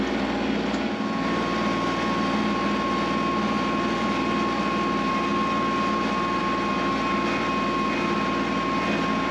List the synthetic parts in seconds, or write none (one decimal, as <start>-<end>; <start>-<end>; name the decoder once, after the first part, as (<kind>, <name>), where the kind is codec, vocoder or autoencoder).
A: none